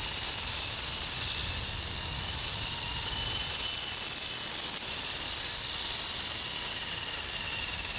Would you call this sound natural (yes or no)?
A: yes